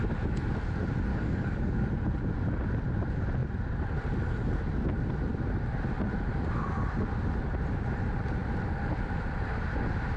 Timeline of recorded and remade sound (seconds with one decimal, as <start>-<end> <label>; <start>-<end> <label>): 0.0-1.1 recorded; 1.1-1.9 remade; 1.9-10.2 recorded